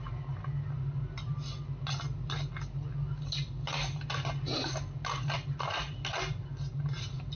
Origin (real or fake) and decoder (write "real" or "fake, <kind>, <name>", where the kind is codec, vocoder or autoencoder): real